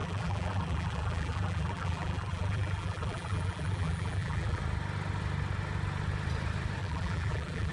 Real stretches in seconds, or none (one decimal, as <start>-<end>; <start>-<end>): 4.6-6.8